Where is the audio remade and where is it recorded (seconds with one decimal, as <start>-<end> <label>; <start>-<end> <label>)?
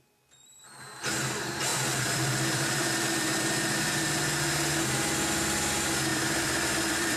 0.0-1.7 recorded; 1.7-4.2 remade; 4.2-6.1 recorded; 6.1-7.2 remade